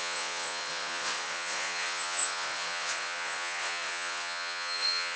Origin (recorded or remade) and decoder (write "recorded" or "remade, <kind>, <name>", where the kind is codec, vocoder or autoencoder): remade, vocoder, Vocos